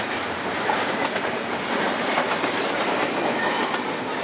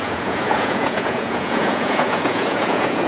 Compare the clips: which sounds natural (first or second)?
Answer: first